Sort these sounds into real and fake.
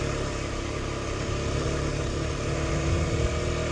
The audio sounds real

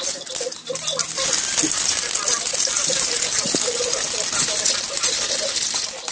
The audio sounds real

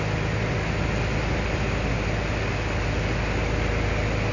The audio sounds real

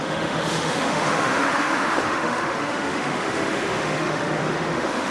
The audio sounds fake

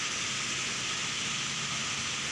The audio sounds real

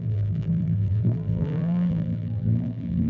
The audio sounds fake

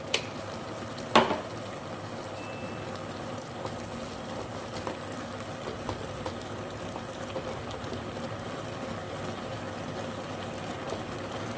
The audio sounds real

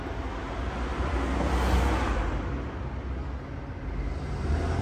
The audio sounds real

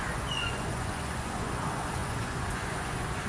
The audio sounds fake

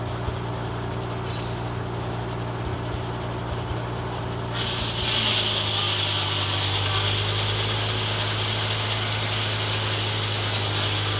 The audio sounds real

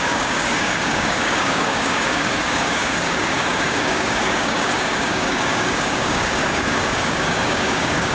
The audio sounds fake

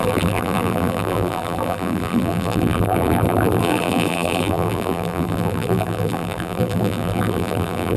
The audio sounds fake